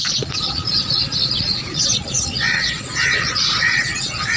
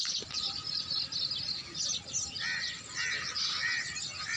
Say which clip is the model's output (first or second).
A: first